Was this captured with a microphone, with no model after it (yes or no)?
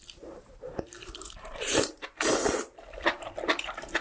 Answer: no